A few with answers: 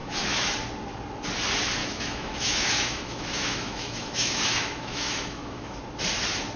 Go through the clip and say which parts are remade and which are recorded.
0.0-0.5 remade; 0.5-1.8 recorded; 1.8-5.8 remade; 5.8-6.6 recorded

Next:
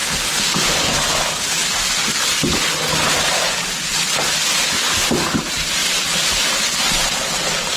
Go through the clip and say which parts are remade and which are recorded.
0.0-1.6 remade; 1.6-5.3 recorded; 5.3-7.8 remade

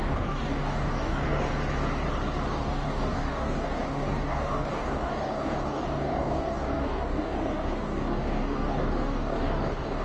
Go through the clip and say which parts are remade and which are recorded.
0.0-1.5 remade; 1.5-2.5 recorded; 2.5-10.0 remade

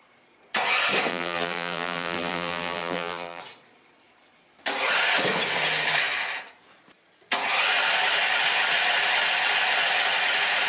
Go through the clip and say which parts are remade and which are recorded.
0.0-1.1 recorded; 1.1-3.4 remade; 3.4-10.7 recorded

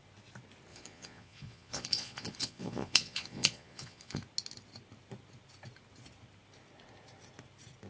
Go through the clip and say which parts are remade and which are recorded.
0.0-0.7 recorded; 0.7-4.2 remade; 4.2-7.9 recorded

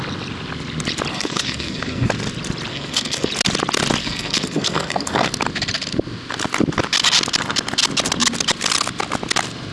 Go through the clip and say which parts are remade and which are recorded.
0.0-1.1 recorded; 1.1-2.1 remade; 2.1-2.7 recorded; 2.7-3.3 remade; 3.3-4.0 recorded; 4.0-5.3 remade; 5.3-9.7 recorded

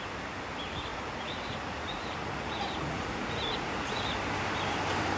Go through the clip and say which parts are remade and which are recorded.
0.0-0.9 recorded; 0.9-4.0 remade; 4.0-5.2 recorded